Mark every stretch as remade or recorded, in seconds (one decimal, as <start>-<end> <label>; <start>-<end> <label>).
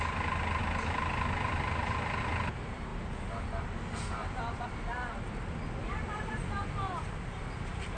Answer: 0.0-0.6 recorded; 0.6-2.2 remade; 2.2-2.9 recorded; 2.9-8.0 remade